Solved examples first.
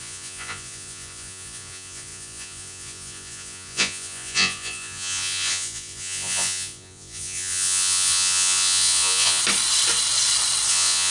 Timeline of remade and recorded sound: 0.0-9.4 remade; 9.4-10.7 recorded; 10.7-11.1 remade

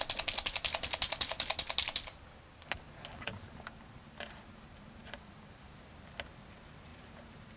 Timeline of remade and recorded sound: 0.0-3.3 recorded; 3.3-5.6 remade; 5.6-6.9 recorded; 6.9-7.6 remade

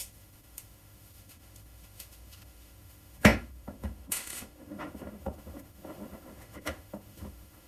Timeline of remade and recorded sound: 0.0-7.7 remade

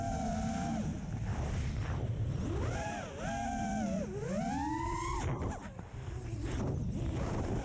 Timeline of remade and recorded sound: 0.0-0.9 recorded; 0.9-3.3 remade; 3.3-5.6 recorded; 5.6-7.6 remade

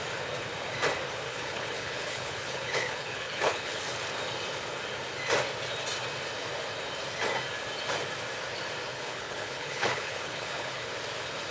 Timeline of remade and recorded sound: 0.0-1.3 recorded; 1.3-3.8 remade; 3.8-8.9 recorded; 8.9-10.9 remade; 10.9-11.5 recorded

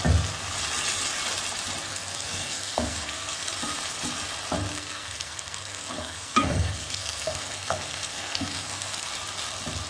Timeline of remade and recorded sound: 0.0-1.9 recorded; 1.9-3.5 remade; 3.5-4.7 recorded; 4.7-9.1 remade; 9.1-9.9 recorded

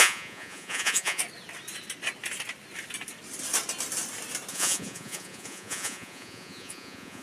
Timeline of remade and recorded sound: 0.0-1.2 remade; 1.2-4.5 recorded; 4.5-7.2 remade